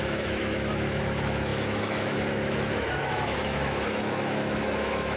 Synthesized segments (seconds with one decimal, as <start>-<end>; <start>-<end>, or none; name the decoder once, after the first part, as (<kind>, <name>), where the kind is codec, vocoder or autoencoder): 0.0-5.2 (autoencoder, DAC-VAE)